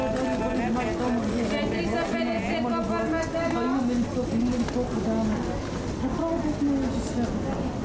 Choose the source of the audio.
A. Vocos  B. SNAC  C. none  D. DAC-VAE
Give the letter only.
C